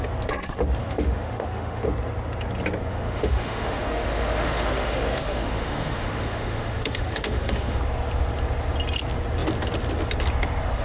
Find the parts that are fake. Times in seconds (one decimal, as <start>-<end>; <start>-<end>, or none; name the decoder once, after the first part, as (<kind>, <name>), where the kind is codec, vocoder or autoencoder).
0.8-1.8 (autoencoder, DAC-VAE); 2.9-7.8